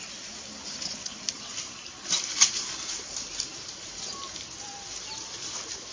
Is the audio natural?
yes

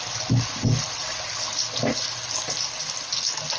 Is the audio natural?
yes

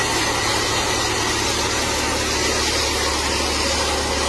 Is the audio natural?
yes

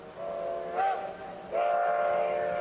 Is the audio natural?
yes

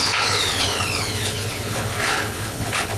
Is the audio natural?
no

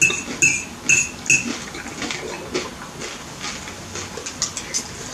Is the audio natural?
yes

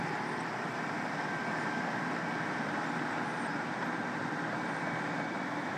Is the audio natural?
no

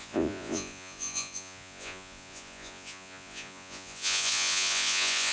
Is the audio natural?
no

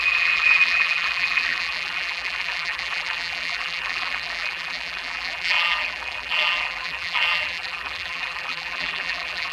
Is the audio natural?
no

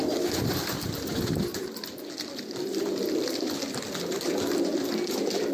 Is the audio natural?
yes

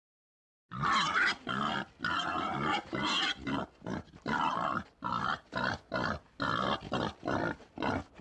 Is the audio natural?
yes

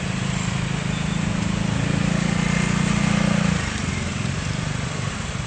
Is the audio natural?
yes